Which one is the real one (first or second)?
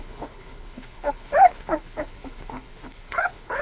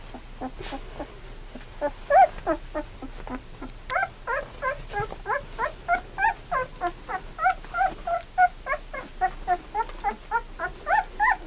second